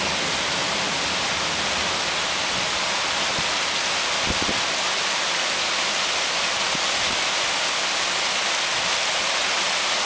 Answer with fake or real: real